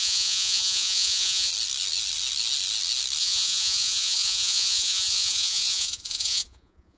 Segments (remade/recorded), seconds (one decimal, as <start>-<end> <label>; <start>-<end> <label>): 0.0-1.5 remade; 1.5-3.2 recorded; 3.2-7.0 remade